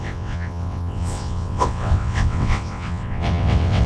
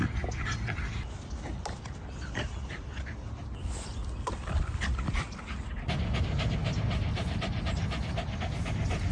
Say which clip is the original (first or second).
second